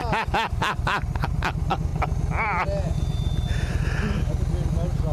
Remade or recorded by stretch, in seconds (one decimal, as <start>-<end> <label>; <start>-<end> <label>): 0.0-5.1 recorded